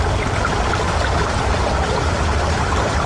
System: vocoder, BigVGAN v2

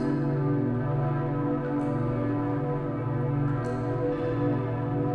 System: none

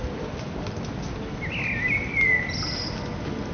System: none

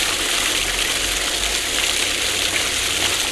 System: none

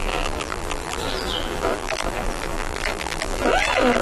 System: vocoder, BigVGAN v2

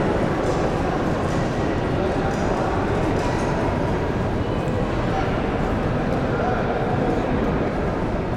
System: vocoder, BigVGAN v2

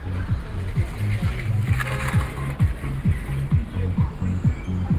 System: none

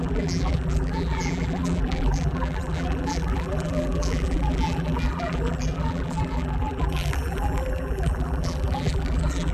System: vocoder, BigVGAN v2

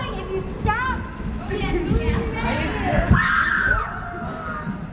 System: none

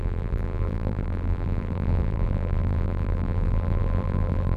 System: vocoder, BigVGAN v2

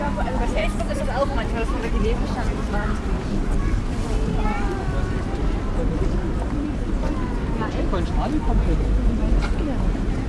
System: vocoder, BigVGAN v2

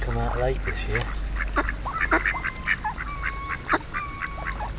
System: none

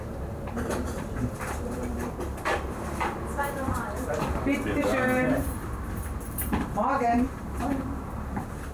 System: vocoder, BigVGAN v2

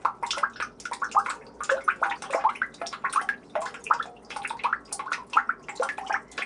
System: none